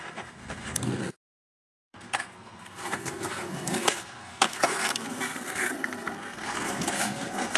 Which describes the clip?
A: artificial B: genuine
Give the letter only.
A